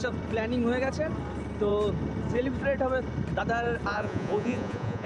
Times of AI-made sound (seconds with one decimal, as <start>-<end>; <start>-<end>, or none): 3.9-5.1